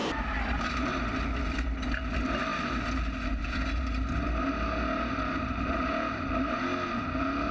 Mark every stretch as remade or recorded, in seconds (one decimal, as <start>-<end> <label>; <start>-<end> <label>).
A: 0.0-7.5 recorded